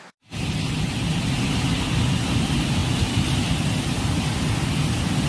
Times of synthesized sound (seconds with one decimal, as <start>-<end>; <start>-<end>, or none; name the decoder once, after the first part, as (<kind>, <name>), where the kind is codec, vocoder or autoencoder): none